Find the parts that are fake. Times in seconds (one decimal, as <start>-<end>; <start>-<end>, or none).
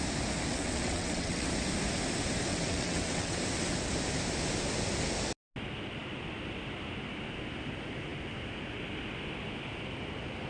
0.5-1.5; 2.5-3.4